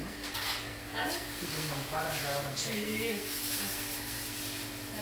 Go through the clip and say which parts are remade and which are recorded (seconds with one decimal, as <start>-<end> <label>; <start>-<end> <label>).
0.0-2.0 remade; 2.0-2.4 recorded; 2.4-4.4 remade; 4.4-5.0 recorded